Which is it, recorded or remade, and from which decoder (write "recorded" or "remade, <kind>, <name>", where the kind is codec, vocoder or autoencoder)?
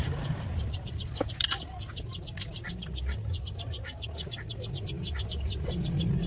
recorded